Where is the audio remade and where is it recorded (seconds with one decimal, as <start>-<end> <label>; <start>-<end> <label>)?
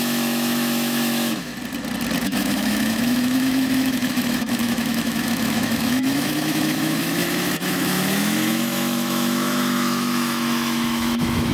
0.0-1.5 remade; 1.5-2.2 recorded; 2.2-11.5 remade